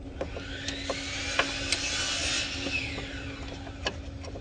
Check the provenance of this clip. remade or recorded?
recorded